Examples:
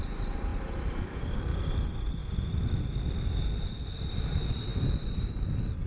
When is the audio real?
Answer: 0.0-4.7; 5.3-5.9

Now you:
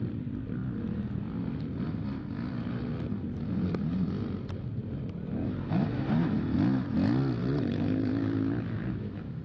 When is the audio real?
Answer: 0.0-7.4

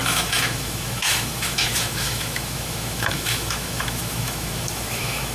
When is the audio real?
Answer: none